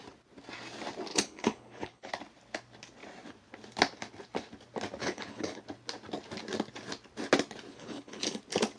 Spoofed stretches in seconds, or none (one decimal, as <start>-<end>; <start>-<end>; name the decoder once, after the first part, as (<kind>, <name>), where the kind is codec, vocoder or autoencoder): 1.1-2.1 (codec, HILCodec); 5.0-5.6; 7.7-8.4